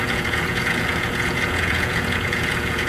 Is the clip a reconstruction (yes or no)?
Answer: yes